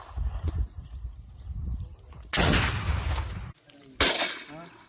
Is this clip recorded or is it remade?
recorded